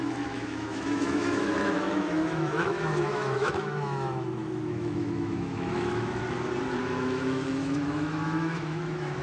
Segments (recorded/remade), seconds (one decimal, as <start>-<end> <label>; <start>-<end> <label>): 0.0-6.2 remade; 6.2-6.8 recorded; 6.8-9.2 remade